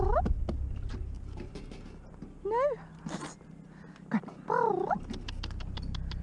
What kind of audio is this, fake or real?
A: real